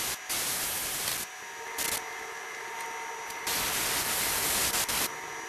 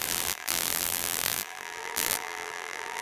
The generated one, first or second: second